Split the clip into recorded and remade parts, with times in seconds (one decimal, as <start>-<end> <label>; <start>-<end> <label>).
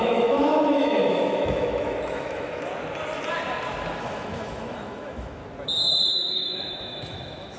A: 0.0-2.7 remade; 2.7-4.0 recorded; 4.0-5.4 remade; 5.4-6.1 recorded; 6.1-7.6 remade